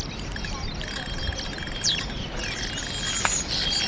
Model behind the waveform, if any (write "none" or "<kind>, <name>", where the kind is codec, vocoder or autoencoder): vocoder, BigVGAN v2